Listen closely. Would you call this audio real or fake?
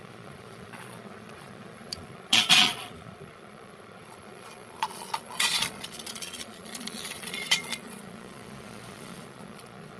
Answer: fake